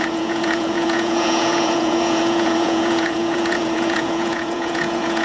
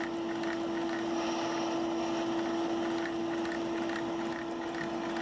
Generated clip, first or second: first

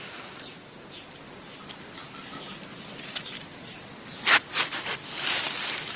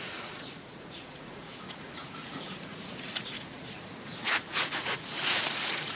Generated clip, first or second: second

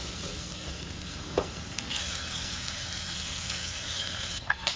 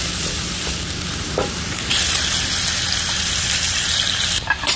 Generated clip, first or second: first